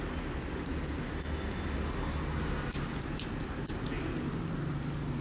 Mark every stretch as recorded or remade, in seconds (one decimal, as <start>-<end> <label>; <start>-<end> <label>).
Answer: 0.0-5.2 recorded